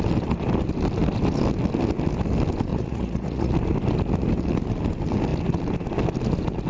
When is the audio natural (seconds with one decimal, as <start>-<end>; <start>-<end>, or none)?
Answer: 0.0-2.7; 3.5-6.7

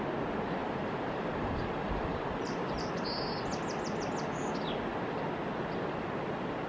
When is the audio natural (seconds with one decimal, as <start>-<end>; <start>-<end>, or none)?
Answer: 0.0-0.6; 2.7-6.7

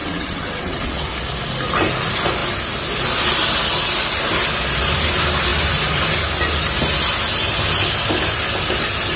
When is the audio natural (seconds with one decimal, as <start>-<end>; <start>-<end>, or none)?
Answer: 1.1-9.2

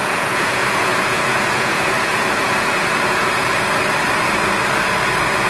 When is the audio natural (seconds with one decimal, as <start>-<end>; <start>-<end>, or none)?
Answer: 3.3-5.5

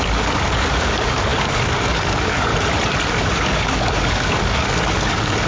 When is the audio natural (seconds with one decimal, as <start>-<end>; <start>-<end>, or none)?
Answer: 2.5-3.1